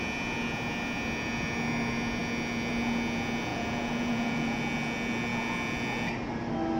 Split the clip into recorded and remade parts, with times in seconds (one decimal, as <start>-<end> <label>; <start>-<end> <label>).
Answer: 0.0-3.5 recorded; 3.5-4.6 remade; 4.6-6.8 recorded